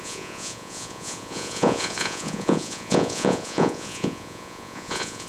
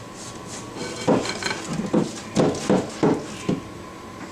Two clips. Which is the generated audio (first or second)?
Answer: first